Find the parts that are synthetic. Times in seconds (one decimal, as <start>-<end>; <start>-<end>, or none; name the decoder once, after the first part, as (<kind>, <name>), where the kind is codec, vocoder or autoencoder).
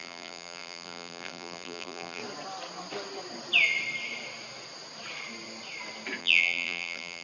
0.0-2.2 (vocoder, BigVGAN v2); 6.2-7.2